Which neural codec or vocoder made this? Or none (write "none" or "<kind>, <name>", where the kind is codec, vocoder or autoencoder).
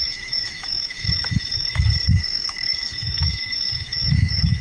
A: autoencoder, DAC-VAE